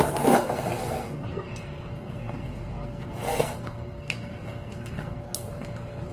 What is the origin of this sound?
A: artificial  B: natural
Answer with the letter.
A